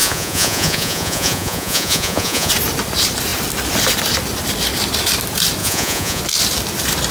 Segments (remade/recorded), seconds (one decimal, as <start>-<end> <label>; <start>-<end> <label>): 0.0-2.5 remade; 2.5-5.6 recorded; 5.6-6.2 remade; 6.2-7.1 recorded